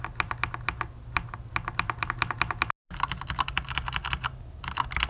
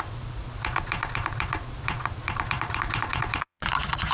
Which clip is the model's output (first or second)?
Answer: second